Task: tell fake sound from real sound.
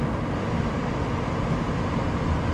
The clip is real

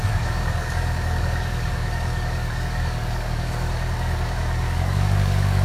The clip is fake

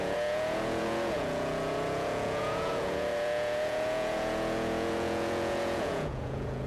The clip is fake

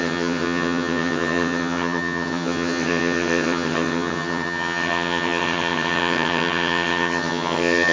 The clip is fake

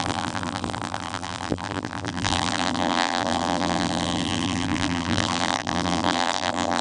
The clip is fake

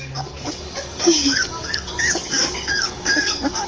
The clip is fake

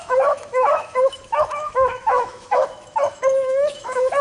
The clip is fake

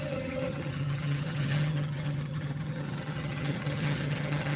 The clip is fake